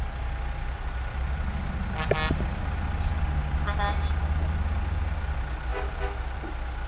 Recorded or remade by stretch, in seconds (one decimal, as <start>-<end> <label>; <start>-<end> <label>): 0.0-6.9 recorded